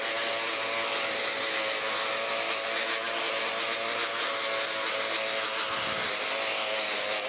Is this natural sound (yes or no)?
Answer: yes